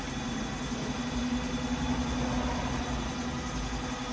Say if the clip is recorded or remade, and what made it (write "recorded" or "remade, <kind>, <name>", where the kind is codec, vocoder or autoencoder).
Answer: recorded